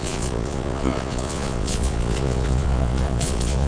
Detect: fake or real fake